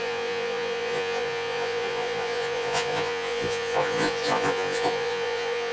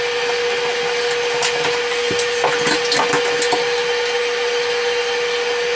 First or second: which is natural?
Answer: second